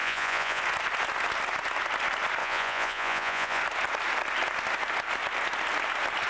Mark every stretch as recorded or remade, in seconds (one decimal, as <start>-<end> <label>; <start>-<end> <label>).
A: 0.0-0.6 remade; 0.6-2.4 recorded; 2.4-3.6 remade; 3.6-6.3 recorded